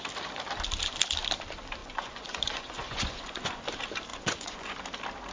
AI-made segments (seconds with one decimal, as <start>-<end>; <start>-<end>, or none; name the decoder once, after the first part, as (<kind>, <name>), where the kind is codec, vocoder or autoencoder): 1.8-3.6 (vocoder, Vocos); 4.1-4.8